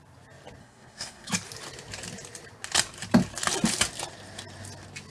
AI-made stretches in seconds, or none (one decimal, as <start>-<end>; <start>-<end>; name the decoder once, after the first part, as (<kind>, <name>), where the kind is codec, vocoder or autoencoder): 0.6-1.3 (codec, SNAC)